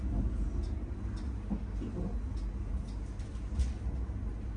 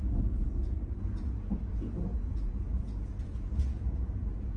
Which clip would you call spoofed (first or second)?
second